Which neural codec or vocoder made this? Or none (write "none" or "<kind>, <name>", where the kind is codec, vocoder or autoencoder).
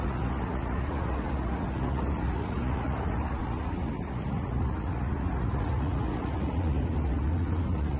vocoder, Vocos